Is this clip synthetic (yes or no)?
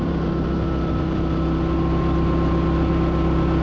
no